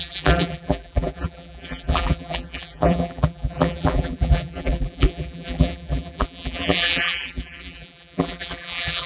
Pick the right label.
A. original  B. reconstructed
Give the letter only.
B